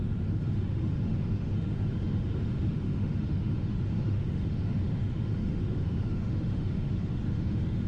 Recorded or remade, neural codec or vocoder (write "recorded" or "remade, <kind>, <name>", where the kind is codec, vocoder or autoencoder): remade, autoencoder, DAC-VAE